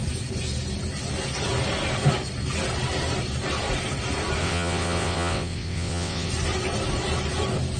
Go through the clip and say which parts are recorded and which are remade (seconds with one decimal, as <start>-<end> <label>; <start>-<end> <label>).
0.0-4.4 recorded; 4.4-6.3 remade; 6.3-7.8 recorded

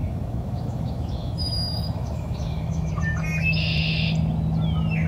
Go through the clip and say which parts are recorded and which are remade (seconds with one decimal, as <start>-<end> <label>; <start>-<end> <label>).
0.0-2.9 remade; 2.9-5.1 recorded

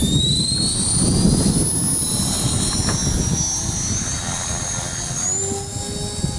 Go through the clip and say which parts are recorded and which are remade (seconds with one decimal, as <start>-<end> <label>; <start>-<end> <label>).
0.0-6.4 recorded

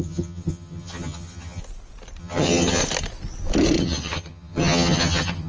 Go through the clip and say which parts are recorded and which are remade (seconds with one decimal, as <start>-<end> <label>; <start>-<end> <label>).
0.0-1.6 remade; 1.6-2.2 recorded; 2.2-2.8 remade; 2.8-3.8 recorded; 3.8-5.5 remade